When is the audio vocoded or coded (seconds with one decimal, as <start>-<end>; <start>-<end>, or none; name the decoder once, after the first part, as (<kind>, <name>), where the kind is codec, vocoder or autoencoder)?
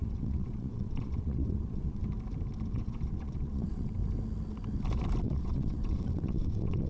0.0-2.0 (vocoder, WaveNeXt); 2.7-4.0; 5.2-6.9